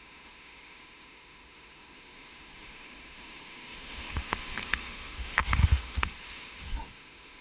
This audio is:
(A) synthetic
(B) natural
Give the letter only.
A